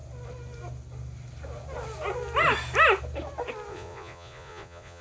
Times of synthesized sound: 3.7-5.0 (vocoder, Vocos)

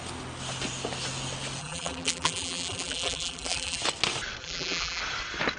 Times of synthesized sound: 1.6-3.8 (vocoder, BigVGAN v2); 4.4-5.0

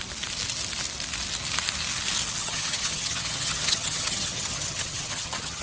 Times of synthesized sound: 2.4-5.6 (vocoder, HiFi-GAN)

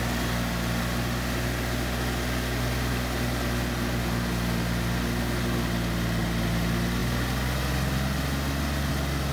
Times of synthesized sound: none